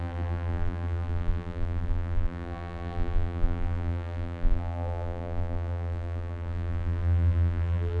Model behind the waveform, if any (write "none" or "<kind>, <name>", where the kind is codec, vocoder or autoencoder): vocoder, BigVGAN v2